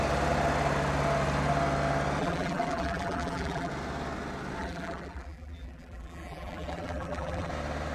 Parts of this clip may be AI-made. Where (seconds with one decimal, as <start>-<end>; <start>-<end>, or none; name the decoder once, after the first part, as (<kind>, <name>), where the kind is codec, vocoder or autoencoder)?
2.2-3.7 (vocoder, BigVGAN v2); 4.6-7.5